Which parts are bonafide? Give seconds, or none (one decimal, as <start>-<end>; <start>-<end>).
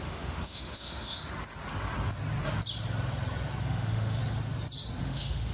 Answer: 1.2-3.6; 4.2-5.0